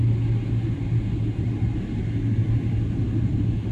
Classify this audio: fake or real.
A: real